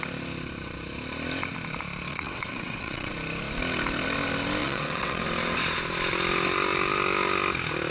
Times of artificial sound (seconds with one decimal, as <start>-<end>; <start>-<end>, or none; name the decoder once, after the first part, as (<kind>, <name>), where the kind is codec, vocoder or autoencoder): 2.1-3.1 (vocoder, WaveNeXt); 4.6-5.2